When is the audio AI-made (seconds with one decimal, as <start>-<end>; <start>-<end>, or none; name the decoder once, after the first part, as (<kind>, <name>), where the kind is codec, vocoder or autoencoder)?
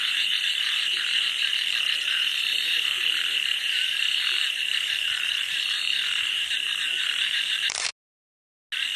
0.0-7.9 (vocoder, BigVGAN v2)